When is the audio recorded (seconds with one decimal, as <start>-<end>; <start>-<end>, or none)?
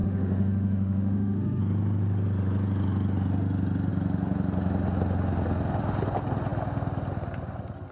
1.6-7.9